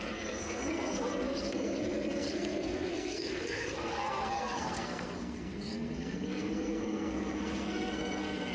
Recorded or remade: remade